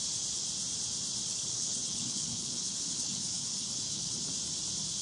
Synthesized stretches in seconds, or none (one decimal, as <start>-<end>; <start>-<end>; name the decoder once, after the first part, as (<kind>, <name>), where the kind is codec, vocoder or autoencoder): 1.3-4.3 (codec, HILCodec)